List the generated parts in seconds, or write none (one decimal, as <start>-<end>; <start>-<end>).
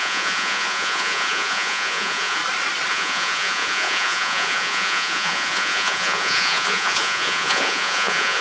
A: 0.0-2.4; 2.9-8.4